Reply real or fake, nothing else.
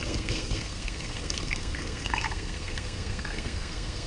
fake